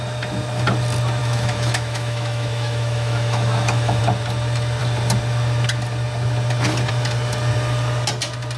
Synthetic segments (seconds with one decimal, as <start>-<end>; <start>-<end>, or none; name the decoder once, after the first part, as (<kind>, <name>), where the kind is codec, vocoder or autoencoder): 1.2-4.0 (autoencoder, DAC-VAE)